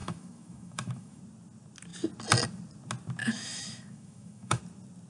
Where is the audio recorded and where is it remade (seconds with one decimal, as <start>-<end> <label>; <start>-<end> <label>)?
0.0-1.2 remade; 1.2-3.2 recorded; 3.2-4.6 remade; 4.6-5.1 recorded